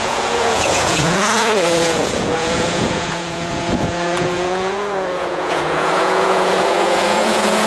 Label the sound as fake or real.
fake